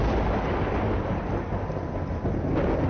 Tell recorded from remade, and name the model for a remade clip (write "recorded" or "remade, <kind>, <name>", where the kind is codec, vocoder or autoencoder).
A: recorded